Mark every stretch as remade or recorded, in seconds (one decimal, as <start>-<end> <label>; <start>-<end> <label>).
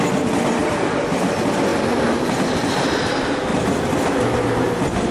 0.0-0.6 recorded; 0.6-1.2 remade; 1.2-1.7 recorded; 1.7-2.3 remade; 2.3-3.5 recorded; 3.5-4.1 remade; 4.1-5.1 recorded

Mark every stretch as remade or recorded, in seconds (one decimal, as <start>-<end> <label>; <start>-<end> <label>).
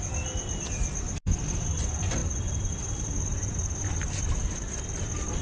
0.0-2.2 recorded; 2.2-2.7 remade; 2.7-5.4 recorded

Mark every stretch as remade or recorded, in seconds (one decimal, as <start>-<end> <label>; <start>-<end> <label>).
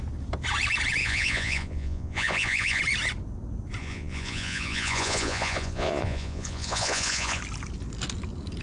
0.0-1.0 recorded; 1.0-2.8 remade; 2.8-3.8 recorded; 3.8-7.4 remade; 7.4-8.6 recorded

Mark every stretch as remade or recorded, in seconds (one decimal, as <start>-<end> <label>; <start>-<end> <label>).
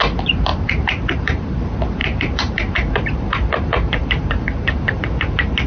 0.0-0.5 recorded; 0.5-1.6 remade; 1.6-2.0 recorded; 2.0-5.0 remade; 5.0-5.7 recorded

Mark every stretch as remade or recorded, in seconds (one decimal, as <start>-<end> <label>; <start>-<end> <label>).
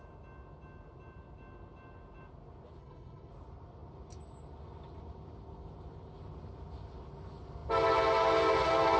0.0-2.8 recorded; 2.8-3.3 remade; 3.3-9.0 recorded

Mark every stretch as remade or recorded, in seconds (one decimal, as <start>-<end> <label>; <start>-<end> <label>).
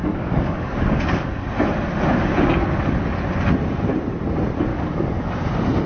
0.0-1.3 remade; 1.3-4.7 recorded; 4.7-5.3 remade; 5.3-5.9 recorded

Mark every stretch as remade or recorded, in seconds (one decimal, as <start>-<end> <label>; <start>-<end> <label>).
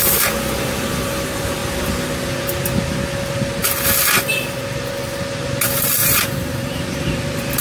0.0-6.0 recorded; 6.0-7.6 remade